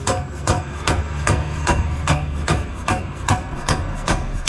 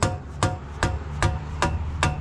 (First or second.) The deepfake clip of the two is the first